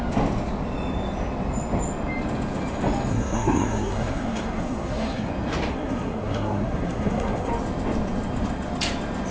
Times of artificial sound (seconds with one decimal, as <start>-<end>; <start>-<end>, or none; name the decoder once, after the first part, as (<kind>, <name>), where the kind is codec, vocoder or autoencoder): 3.1-5.3 (codec, SNAC); 5.7-7.5